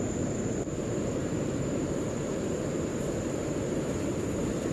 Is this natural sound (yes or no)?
no